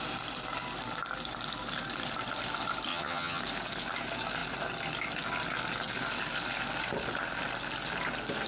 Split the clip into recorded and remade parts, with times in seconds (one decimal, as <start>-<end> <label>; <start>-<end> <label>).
0.0-2.9 recorded; 2.9-3.4 remade; 3.4-8.5 recorded